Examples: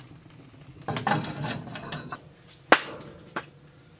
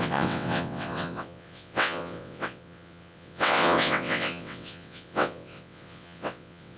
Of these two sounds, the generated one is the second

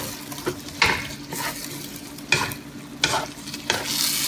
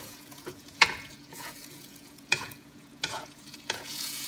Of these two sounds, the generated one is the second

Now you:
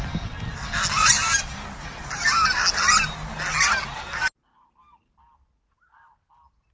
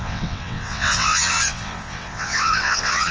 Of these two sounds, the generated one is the second